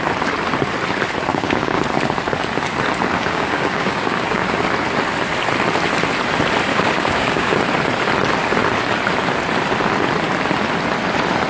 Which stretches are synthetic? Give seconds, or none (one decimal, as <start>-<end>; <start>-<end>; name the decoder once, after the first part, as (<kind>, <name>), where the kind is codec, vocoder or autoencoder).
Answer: 1.3-1.8 (codec, DAC); 3.2-4.6; 6.7-7.6